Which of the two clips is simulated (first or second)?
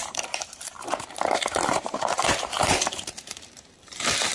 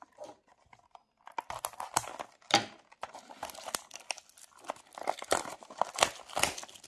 first